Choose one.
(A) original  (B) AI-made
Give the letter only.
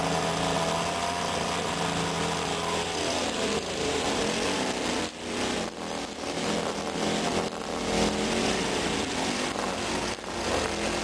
A